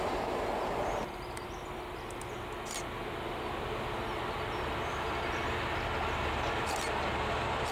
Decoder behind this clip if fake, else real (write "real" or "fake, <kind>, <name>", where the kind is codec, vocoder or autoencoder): real